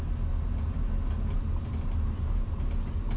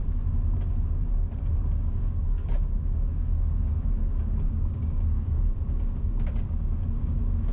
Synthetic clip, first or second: second